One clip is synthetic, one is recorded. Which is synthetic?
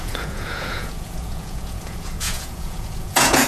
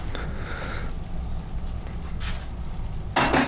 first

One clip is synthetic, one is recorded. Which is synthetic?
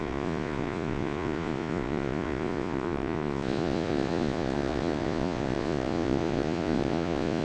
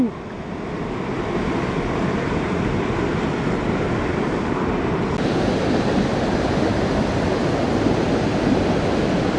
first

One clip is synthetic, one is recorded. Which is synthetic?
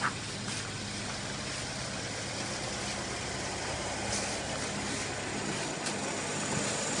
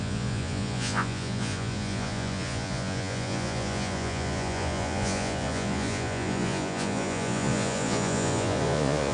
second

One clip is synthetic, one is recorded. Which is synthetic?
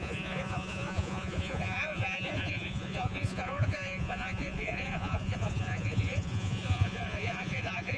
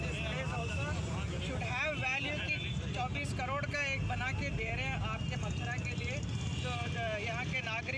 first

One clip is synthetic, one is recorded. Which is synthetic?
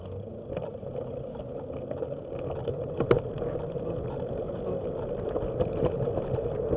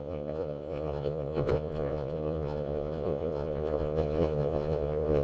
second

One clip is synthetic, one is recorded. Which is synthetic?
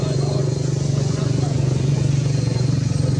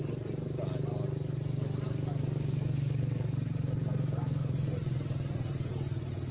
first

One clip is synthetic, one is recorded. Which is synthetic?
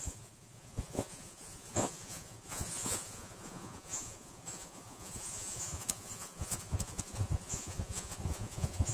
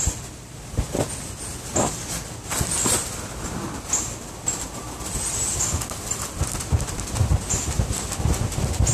first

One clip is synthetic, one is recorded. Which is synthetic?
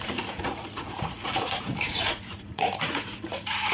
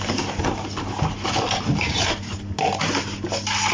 first